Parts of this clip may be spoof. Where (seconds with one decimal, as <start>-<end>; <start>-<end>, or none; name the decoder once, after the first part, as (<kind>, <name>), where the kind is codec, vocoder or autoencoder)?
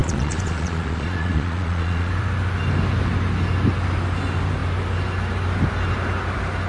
0.0-2.1 (vocoder, Vocos)